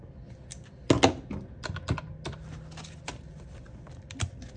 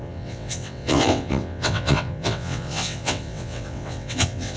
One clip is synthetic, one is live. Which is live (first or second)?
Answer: first